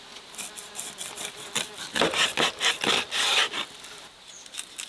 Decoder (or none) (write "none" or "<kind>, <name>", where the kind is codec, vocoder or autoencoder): none